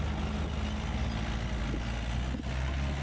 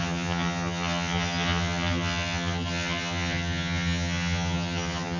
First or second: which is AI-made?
second